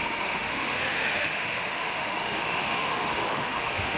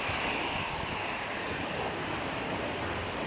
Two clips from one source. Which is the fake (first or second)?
first